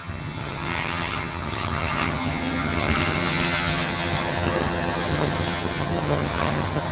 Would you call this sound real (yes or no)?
no